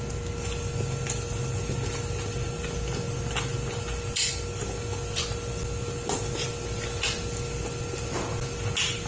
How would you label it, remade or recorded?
recorded